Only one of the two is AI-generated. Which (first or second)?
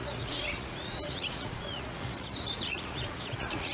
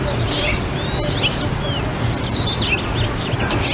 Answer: first